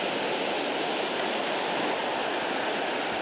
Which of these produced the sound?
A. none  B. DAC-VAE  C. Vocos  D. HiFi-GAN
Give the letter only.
A